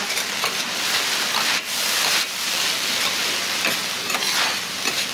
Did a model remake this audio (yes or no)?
no